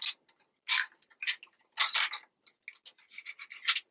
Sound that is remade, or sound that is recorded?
recorded